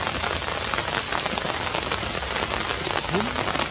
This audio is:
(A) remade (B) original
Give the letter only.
B